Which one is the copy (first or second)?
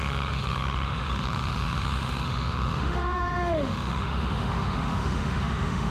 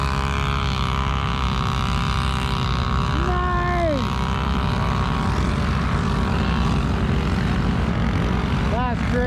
first